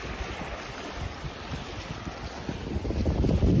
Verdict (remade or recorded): recorded